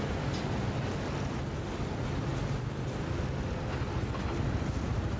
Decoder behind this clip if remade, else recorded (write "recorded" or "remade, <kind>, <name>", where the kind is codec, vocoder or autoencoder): recorded